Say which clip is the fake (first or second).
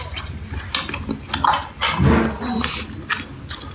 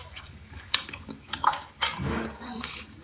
second